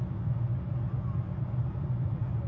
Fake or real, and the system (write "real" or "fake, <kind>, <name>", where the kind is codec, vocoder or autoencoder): real